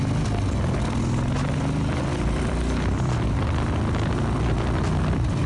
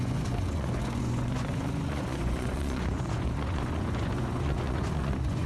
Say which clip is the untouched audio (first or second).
first